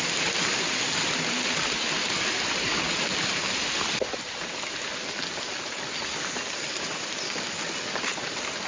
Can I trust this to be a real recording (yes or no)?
yes